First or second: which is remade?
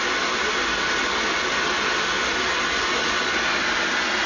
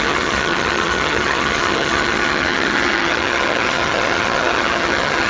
second